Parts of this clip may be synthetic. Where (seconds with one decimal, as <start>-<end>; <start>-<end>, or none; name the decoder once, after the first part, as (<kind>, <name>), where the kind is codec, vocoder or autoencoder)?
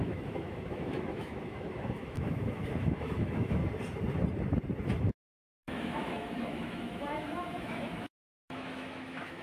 0.0-3.6 (autoencoder, DAC-VAE); 5.1-9.4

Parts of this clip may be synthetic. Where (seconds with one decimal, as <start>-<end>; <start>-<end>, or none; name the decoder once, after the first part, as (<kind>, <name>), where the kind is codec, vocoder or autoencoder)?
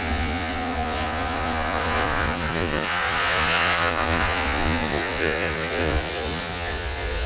0.0-7.3 (vocoder, Vocos)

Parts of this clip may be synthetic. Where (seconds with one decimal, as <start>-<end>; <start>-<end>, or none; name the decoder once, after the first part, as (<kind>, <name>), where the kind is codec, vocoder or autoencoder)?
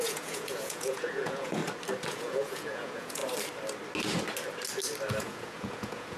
0.0-1.6 (vocoder, Vocos); 2.1-3.2; 5.2-6.2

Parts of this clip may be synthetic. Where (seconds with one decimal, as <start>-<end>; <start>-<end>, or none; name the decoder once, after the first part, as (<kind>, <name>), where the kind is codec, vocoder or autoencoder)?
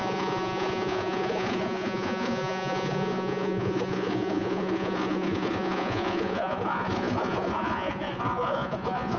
0.0-9.2 (vocoder, Vocos)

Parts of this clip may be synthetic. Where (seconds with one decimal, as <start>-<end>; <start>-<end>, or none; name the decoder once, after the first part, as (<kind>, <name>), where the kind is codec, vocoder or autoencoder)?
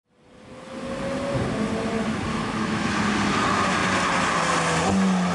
2.3-2.9 (autoencoder, DAC-VAE)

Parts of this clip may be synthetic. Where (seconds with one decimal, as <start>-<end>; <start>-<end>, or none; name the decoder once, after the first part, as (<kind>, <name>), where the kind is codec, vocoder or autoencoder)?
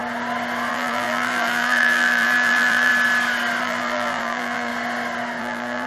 0.7-2.9 (vocoder, BigVGAN v2); 3.6-4.7; 5.4-5.9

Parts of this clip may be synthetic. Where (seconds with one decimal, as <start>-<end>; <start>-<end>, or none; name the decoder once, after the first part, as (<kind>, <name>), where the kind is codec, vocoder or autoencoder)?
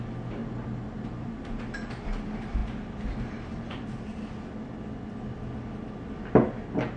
0.4-1.4 (vocoder, BigVGAN v2)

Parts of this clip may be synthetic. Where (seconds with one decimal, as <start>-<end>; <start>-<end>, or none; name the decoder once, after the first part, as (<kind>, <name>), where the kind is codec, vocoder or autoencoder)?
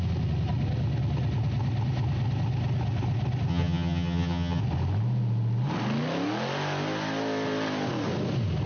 3.5-4.6 (vocoder, HiFi-GAN)